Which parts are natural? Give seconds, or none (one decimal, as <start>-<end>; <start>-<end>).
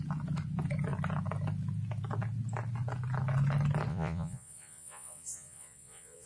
0.0-3.9